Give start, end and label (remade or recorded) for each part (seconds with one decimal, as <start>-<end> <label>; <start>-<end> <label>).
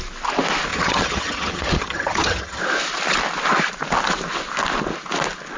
0.0-0.7 recorded; 0.7-2.6 remade; 2.6-5.6 recorded